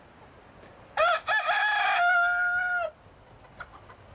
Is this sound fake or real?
real